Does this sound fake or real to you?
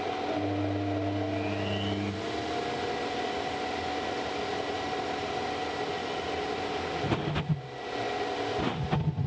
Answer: real